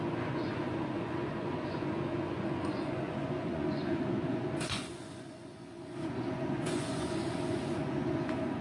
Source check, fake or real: fake